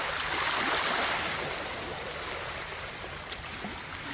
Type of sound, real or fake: real